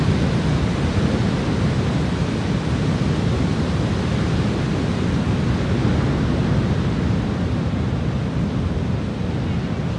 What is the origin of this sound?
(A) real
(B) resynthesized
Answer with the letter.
A